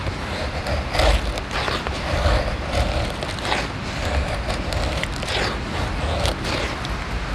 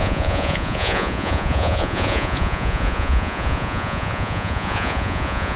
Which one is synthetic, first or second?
second